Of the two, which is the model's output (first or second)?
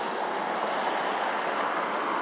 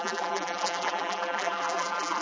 second